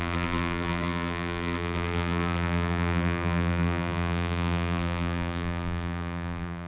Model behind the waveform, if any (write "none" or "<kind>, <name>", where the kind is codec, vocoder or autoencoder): vocoder, BigVGAN v2